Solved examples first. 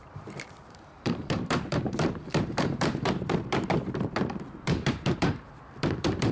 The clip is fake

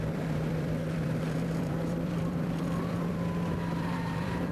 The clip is fake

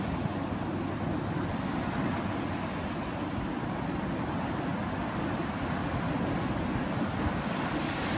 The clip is real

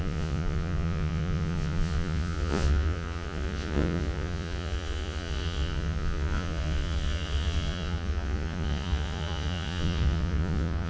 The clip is fake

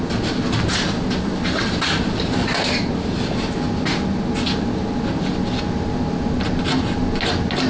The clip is real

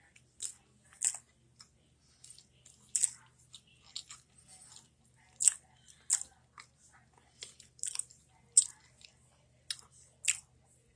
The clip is real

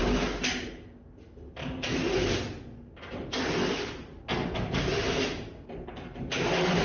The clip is real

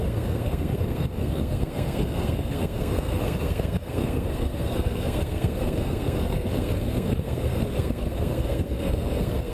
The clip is fake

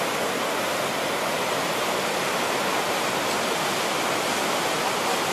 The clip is real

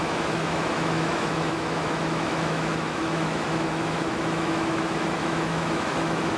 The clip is fake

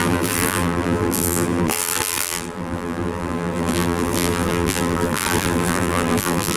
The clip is fake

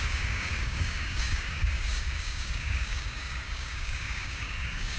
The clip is fake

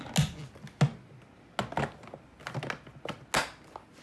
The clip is real